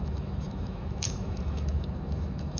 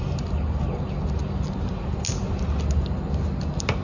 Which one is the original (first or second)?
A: second